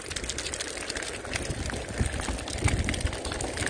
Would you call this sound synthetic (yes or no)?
no